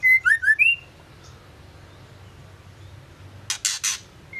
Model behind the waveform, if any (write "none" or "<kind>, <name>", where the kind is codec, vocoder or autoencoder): none